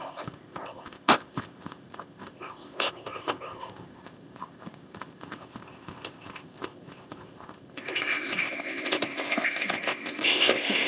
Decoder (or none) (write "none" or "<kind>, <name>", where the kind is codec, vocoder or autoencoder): codec, ZipCodec